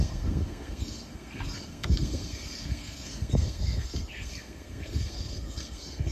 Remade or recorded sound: remade